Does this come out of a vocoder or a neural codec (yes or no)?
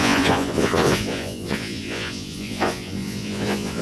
yes